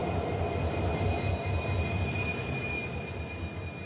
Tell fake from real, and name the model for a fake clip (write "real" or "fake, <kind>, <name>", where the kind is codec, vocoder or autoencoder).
real